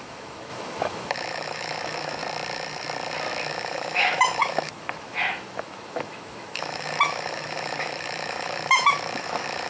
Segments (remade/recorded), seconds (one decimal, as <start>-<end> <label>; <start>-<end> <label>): 0.0-2.2 remade; 2.2-3.5 recorded; 3.5-9.7 remade